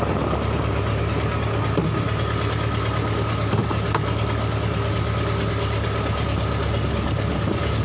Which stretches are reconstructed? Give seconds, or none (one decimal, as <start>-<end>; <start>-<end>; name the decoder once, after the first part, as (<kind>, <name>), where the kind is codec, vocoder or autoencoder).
none

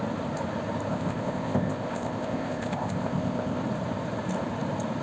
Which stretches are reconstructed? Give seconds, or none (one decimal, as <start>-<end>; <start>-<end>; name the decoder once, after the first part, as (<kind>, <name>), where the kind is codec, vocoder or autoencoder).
0.9-3.6 (codec, ZipCodec)

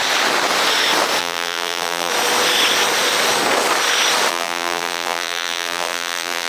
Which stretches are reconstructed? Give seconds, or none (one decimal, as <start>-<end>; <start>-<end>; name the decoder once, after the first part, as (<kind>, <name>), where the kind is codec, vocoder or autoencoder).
1.2-2.1 (vocoder, BigVGAN v2); 4.3-6.5

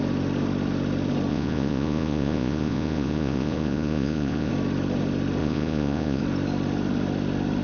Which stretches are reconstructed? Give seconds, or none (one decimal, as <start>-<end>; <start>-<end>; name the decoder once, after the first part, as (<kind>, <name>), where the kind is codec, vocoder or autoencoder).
1.3-4.5 (vocoder, Vocos); 5.4-6.2